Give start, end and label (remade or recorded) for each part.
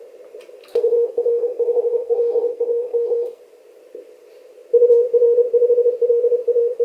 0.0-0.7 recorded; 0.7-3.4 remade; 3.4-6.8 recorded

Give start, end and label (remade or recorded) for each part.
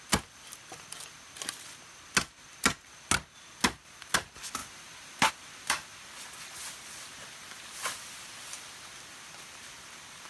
0.0-10.3 recorded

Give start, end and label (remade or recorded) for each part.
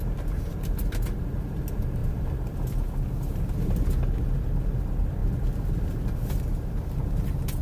0.0-2.0 recorded; 2.0-2.6 remade; 2.6-7.6 recorded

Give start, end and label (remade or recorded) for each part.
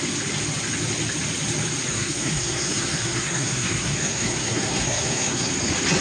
0.0-1.9 recorded; 1.9-5.5 remade; 5.5-6.0 recorded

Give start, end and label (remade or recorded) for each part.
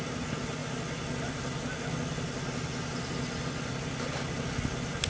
0.0-5.1 recorded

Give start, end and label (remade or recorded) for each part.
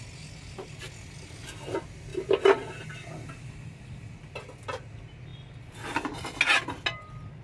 0.0-7.4 recorded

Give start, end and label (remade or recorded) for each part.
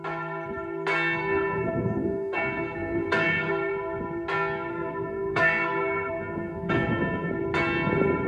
0.0-1.2 recorded; 1.2-3.5 remade; 3.5-4.7 recorded; 4.7-7.3 remade; 7.3-8.3 recorded